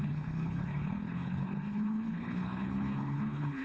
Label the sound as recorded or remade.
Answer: remade